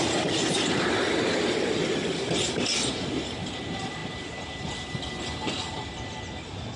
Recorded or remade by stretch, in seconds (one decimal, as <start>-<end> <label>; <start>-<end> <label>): 0.0-6.8 recorded